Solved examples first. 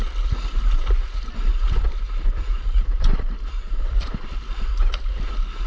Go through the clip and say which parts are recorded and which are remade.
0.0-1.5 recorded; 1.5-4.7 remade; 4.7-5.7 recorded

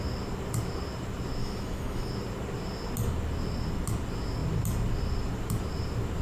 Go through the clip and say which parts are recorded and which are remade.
0.0-1.4 recorded; 1.4-2.1 remade; 2.1-6.2 recorded

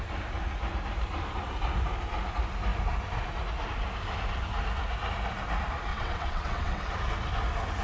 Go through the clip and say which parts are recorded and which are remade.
0.0-5.9 recorded; 5.9-6.9 remade; 6.9-7.8 recorded

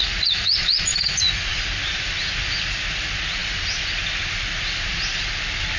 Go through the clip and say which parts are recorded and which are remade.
0.0-1.6 remade; 1.6-5.8 recorded

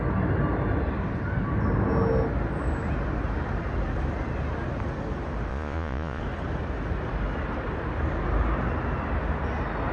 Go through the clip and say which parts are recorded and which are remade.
0.0-5.5 recorded; 5.5-6.2 remade; 6.2-9.9 recorded

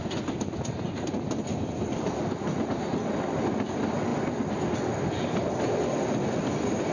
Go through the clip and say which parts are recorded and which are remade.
0.0-6.9 recorded

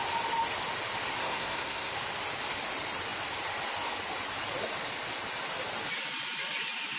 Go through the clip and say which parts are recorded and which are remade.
0.0-1.2 recorded; 1.2-1.9 remade; 1.9-7.0 recorded

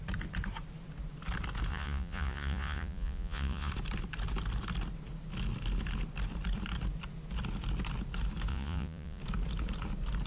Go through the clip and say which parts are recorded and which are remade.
0.0-1.7 recorded; 1.7-3.7 remade; 3.7-8.5 recorded; 8.5-9.2 remade; 9.2-10.3 recorded